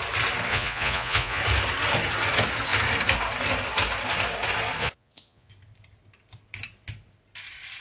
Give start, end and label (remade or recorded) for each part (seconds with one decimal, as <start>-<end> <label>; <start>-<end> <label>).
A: 0.0-0.5 recorded; 0.5-1.4 remade; 1.4-4.8 recorded; 4.8-5.5 remade; 5.5-7.8 recorded